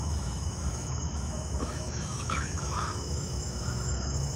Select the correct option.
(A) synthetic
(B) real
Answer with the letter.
A